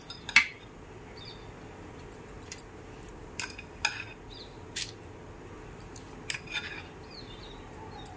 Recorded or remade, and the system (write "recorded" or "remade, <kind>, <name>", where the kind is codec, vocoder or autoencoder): recorded